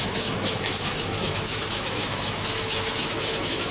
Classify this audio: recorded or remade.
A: remade